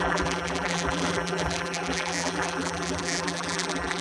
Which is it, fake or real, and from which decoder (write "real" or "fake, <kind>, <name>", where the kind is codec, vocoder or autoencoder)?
fake, vocoder, BigVGAN v2